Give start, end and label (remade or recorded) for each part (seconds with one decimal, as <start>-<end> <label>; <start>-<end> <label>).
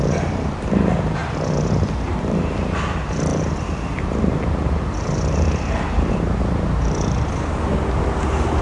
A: 0.0-8.6 remade